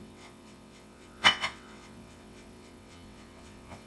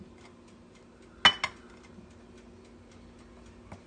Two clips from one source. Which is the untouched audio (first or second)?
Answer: second